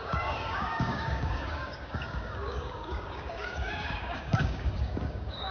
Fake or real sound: fake